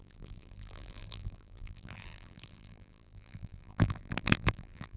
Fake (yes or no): yes